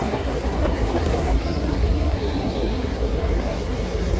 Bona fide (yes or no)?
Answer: no